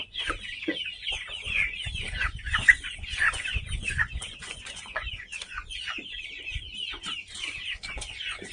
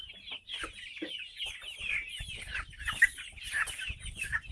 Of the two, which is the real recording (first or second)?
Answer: second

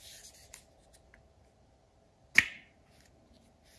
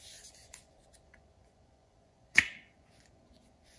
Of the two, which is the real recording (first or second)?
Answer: first